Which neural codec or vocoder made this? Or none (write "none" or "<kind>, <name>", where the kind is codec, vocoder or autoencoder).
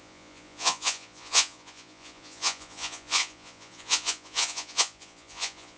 vocoder, Vocos